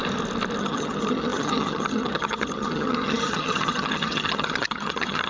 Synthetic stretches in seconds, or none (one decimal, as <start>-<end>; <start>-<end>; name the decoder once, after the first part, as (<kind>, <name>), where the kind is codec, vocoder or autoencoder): 0.6-5.3 (vocoder, HiFi-GAN)